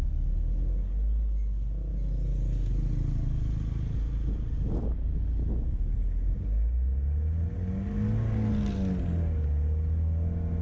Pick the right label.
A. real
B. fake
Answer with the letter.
A